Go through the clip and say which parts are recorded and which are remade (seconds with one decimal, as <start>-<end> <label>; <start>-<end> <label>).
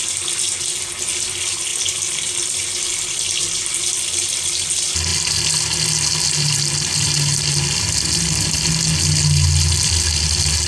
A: 0.0-10.7 recorded